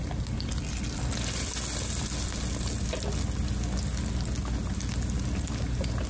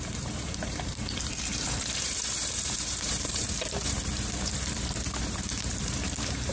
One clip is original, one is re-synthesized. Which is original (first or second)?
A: first